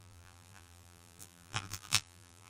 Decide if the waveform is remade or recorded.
remade